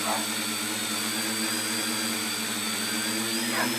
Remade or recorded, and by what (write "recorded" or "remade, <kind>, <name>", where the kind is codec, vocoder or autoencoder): recorded